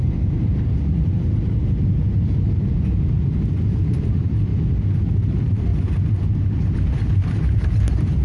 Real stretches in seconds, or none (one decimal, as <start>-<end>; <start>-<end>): 4.5-5.3; 5.7-6.9